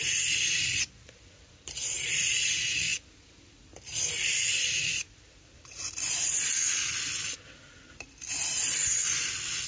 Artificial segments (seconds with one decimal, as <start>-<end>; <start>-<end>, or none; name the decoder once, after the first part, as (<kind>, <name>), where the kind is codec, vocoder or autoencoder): 0.0-2.9 (vocoder, BigVGAN v2); 5.6-6.3; 7.9-9.7